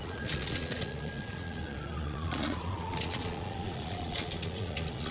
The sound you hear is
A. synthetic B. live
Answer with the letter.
A